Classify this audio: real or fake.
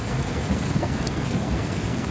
fake